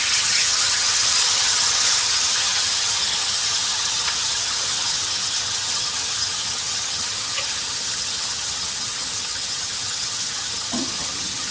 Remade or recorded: remade